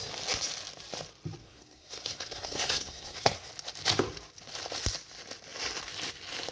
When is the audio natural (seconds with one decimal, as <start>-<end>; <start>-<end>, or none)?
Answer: 0.0-1.4; 3.5-6.5